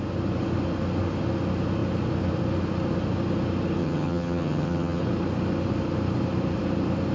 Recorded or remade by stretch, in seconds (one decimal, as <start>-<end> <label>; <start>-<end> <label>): 0.0-3.8 recorded; 3.8-5.0 remade; 5.0-7.1 recorded